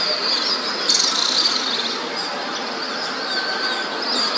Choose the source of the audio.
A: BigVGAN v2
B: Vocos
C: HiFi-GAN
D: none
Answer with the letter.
D